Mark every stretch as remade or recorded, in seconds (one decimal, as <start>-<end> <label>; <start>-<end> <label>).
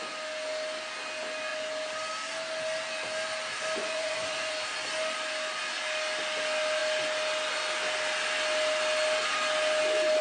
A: 0.0-3.8 recorded; 3.8-4.5 remade; 4.5-10.2 recorded